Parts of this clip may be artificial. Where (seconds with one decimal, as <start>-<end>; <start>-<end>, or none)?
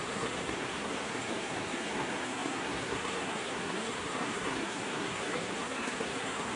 0.0-6.6